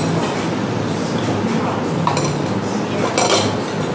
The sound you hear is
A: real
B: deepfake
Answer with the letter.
A